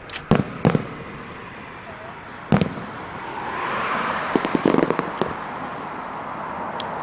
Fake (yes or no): no